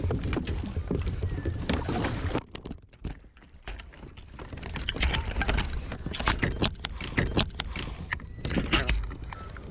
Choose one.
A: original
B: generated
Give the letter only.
A